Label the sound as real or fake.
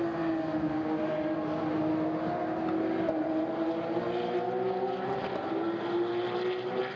real